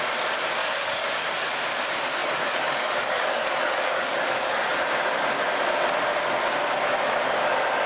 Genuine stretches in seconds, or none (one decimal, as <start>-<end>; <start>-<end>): 0.0-0.6; 1.5-2.2; 4.7-7.9